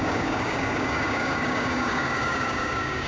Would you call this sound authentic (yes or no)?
no